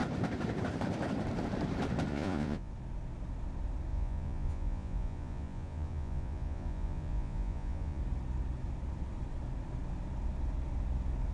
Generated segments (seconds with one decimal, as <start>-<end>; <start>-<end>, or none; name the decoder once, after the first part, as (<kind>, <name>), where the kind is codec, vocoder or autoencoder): 2.1-2.7 (vocoder, Vocos); 3.9-8.0